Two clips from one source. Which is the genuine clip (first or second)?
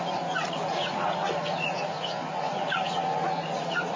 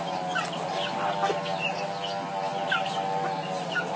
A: second